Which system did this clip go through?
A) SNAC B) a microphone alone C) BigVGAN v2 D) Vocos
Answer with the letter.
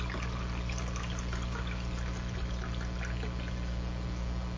B